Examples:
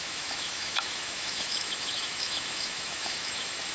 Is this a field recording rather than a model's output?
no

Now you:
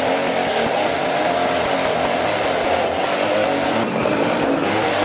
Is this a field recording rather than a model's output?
yes